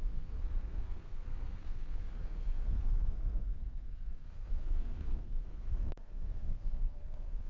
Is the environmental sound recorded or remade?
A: remade